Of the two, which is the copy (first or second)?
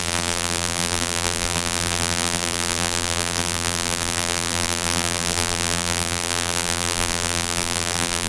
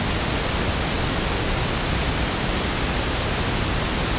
first